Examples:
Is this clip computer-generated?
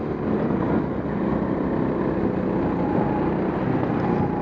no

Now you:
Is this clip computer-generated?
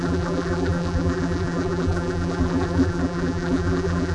yes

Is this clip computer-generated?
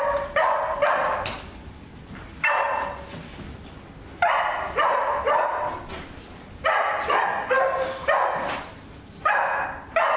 no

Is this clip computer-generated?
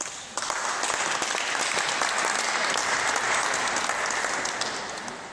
no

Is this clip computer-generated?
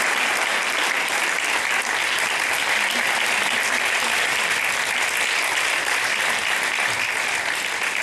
no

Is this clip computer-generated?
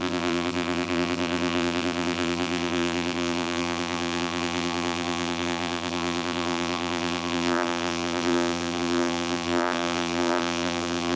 yes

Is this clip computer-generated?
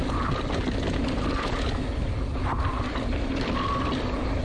no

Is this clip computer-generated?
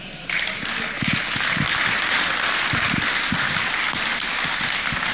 no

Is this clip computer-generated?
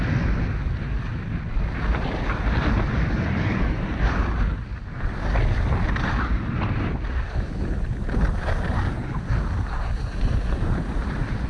no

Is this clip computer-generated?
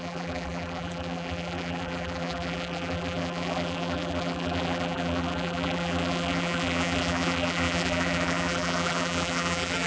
yes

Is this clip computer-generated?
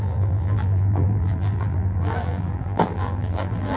yes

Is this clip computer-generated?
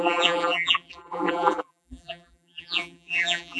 yes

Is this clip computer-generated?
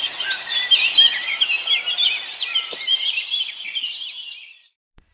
yes